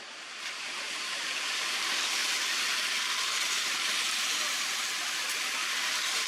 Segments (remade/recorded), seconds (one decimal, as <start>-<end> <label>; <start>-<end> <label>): 0.0-6.3 recorded